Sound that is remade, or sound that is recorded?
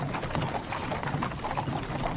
recorded